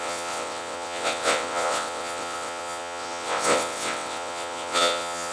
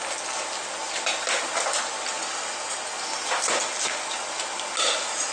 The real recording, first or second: second